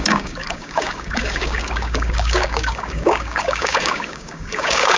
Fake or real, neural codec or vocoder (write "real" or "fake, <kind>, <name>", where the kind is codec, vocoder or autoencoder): fake, codec, DAC